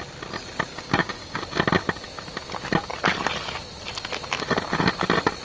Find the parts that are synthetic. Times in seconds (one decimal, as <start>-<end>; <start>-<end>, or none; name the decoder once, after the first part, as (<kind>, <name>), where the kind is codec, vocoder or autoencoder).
0.7-1.4 (codec, DAC)